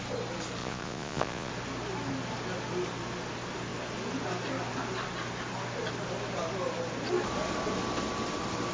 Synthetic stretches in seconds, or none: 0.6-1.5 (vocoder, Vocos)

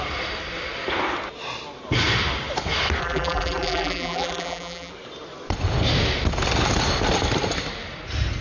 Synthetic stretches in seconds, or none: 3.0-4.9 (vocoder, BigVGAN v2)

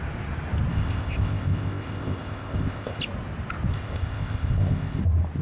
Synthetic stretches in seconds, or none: 0.7-3.0 (codec, ZipCodec); 3.7-5.0

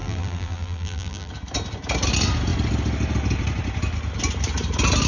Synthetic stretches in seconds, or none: 0.0-1.3 (vocoder, BigVGAN v2)